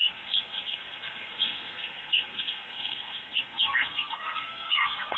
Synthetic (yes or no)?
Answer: yes